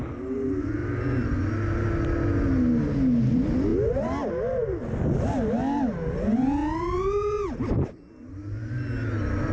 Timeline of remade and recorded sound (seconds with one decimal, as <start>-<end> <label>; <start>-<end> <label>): 0.0-9.5 recorded